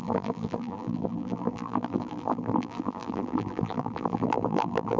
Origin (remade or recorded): remade